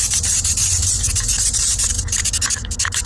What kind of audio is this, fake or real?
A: real